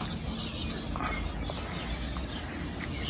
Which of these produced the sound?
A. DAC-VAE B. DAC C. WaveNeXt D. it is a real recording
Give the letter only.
D